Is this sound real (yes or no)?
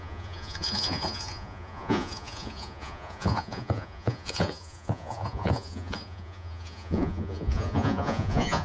no